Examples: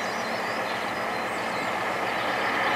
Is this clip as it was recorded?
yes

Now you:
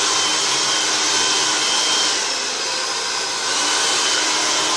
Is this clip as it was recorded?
yes